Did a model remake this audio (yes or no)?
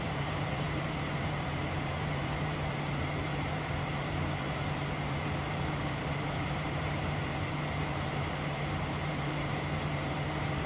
yes